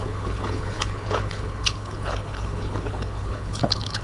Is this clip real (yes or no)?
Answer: no